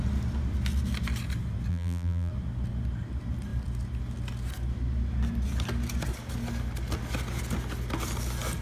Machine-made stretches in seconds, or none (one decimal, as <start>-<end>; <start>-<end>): 1.7-2.3